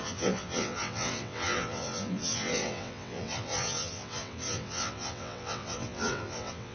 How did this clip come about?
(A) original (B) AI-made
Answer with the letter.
B